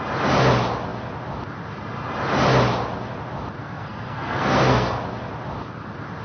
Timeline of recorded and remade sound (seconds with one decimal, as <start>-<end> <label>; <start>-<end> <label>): 0.0-3.6 recorded; 3.6-5.0 remade; 5.0-6.2 recorded